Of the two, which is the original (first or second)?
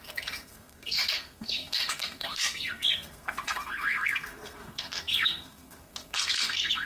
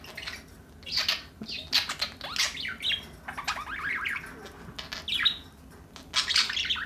second